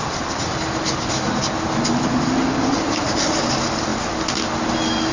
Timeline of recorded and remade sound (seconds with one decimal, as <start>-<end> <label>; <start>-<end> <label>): 0.0-5.1 recorded